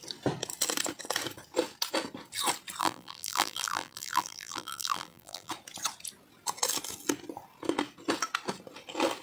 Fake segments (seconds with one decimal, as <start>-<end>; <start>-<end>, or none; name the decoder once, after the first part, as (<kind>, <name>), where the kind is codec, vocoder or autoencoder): 2.8-5.5 (vocoder, BigVGAN v2)